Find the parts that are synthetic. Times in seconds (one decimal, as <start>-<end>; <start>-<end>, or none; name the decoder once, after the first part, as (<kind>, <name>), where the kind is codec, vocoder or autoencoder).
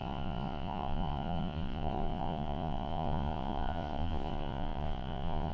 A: 0.0-5.5 (vocoder, Vocos)